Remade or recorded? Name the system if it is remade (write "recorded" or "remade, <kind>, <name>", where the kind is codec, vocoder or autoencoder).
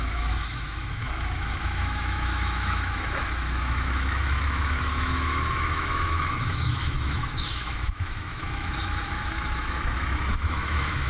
remade, autoencoder, DAC-VAE